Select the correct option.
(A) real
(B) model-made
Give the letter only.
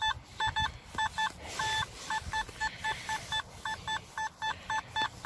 A